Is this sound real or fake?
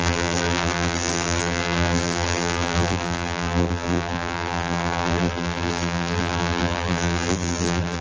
fake